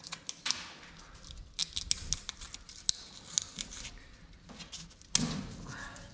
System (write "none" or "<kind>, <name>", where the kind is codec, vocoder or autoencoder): none